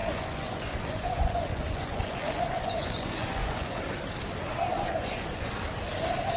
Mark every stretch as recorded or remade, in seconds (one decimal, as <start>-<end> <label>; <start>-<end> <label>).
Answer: 0.0-3.8 remade; 3.8-4.7 recorded; 4.7-5.5 remade; 5.5-6.4 recorded